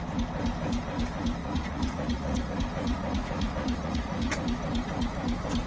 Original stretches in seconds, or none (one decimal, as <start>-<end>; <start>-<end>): 0.0-1.4; 2.5-2.9; 4.3-5.7